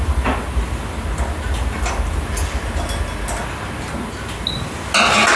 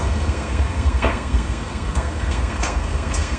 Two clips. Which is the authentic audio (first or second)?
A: first